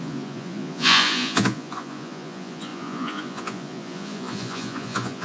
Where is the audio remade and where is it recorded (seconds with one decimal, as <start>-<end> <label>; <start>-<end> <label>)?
0.0-5.2 remade